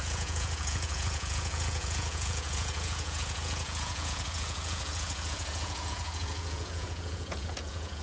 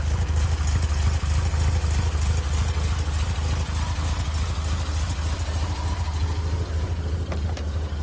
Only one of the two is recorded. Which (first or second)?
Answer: second